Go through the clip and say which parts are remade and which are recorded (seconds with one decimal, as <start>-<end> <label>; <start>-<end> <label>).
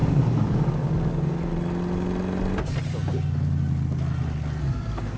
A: 0.0-1.5 remade; 1.5-4.6 recorded; 4.6-5.2 remade